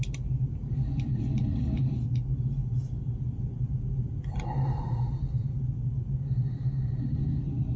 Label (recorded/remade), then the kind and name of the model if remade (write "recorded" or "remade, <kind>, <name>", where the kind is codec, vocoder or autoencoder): recorded